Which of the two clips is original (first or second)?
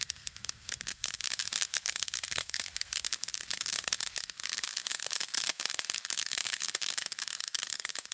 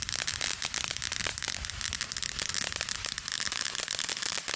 second